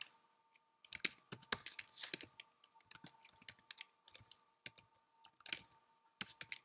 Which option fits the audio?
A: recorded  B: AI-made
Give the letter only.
A